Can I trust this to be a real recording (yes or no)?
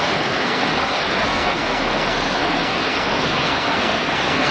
no